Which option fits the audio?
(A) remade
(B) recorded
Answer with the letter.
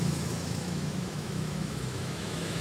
A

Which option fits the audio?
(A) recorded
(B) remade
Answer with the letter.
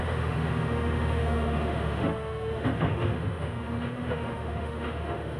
B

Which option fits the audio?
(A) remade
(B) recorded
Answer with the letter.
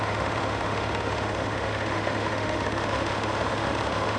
A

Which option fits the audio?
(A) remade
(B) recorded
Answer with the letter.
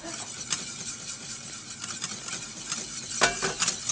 B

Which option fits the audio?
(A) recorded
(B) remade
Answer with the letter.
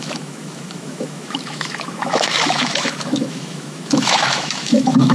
B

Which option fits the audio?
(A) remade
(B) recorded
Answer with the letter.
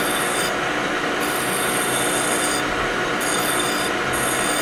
B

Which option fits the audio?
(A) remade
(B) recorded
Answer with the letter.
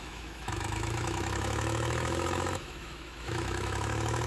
A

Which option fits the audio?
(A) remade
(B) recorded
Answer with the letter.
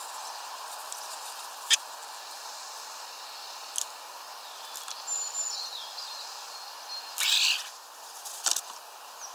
B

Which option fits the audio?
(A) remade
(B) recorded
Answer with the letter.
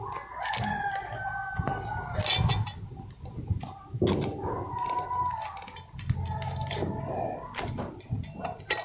B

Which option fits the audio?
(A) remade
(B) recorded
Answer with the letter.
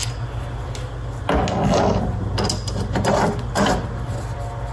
B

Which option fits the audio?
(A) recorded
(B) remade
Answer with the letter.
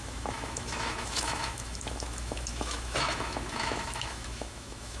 B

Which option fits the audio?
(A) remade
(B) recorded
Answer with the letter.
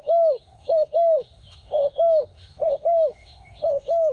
A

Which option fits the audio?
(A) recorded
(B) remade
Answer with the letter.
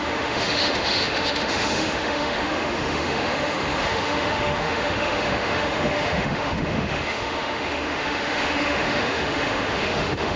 B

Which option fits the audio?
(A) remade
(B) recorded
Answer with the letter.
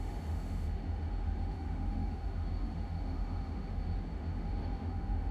A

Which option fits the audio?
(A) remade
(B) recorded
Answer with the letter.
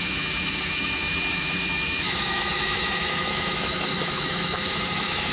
A